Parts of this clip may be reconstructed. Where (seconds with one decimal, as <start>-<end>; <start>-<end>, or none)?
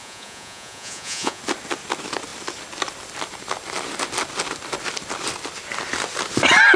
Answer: 0.0-1.4